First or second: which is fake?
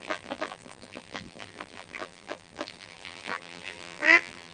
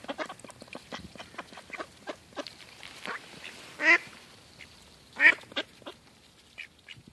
first